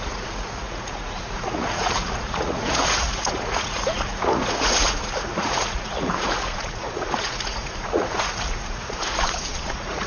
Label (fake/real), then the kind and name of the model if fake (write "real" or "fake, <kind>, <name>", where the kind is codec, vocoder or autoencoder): fake, vocoder, Vocos